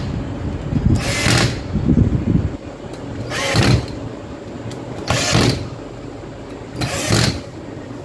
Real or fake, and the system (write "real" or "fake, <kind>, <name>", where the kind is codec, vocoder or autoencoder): real